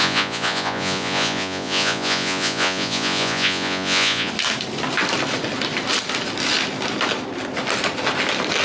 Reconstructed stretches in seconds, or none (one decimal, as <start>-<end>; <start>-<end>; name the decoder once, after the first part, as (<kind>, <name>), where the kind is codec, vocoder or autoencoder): 0.0-4.3 (vocoder, Vocos)